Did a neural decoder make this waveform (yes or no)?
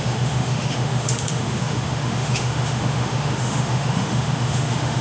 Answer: yes